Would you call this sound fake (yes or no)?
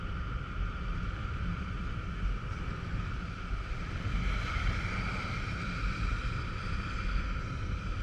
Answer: yes